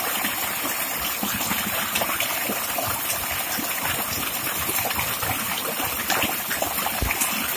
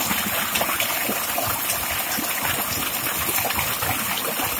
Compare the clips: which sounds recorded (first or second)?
second